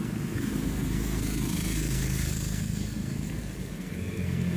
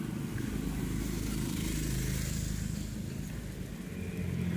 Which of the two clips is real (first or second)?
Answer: second